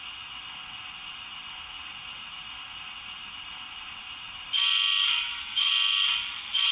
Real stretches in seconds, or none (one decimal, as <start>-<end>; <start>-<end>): 0.0-5.1; 5.7-6.7